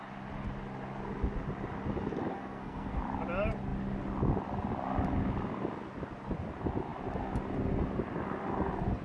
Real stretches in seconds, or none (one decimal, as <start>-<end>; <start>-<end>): 0.0-2.3; 3.0-9.0